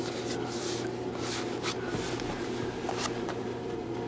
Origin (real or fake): real